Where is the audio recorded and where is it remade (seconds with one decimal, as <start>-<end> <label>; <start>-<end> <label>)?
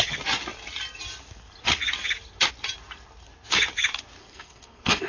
0.0-4.2 recorded; 4.2-5.1 remade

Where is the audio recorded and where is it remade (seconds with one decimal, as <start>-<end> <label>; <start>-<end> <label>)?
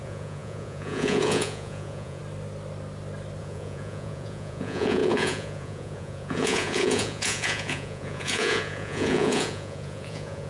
0.0-2.2 remade; 2.2-3.4 recorded; 3.4-10.5 remade